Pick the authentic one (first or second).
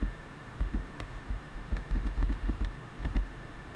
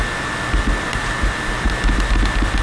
second